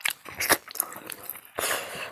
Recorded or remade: recorded